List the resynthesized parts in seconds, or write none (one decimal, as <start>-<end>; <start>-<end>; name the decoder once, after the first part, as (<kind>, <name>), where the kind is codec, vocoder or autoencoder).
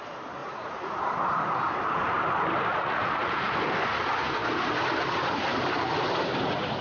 0.4-1.1 (vocoder, Vocos); 2.7-3.5